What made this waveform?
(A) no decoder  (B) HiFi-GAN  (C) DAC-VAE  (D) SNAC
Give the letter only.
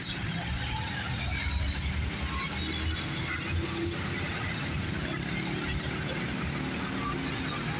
A